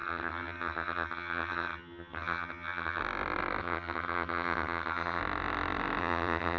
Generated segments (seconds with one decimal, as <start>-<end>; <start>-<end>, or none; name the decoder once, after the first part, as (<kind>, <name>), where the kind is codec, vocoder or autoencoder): 0.0-3.0 (vocoder, HiFi-GAN); 3.6-5.2; 6.0-6.6